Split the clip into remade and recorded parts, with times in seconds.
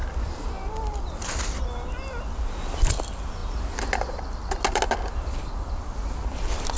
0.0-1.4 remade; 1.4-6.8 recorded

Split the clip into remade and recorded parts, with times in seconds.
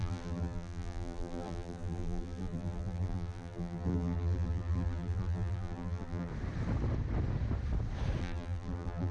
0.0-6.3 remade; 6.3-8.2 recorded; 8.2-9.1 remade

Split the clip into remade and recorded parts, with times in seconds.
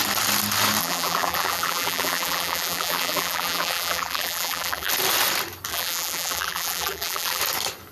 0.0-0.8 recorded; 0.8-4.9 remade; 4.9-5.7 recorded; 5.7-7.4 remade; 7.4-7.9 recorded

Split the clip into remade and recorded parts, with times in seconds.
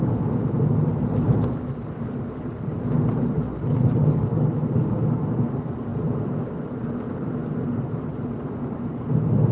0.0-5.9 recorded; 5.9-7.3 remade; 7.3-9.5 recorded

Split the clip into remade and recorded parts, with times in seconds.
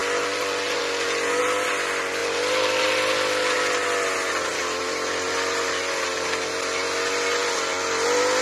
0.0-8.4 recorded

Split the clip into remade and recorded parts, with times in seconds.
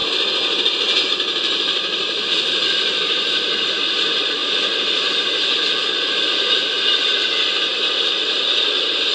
0.0-4.4 remade; 4.4-5.9 recorded; 5.9-9.1 remade